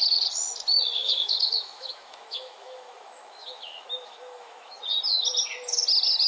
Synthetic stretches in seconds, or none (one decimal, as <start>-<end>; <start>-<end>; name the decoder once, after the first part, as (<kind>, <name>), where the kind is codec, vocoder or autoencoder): 1.0-4.8 (autoencoder, DAC-VAE)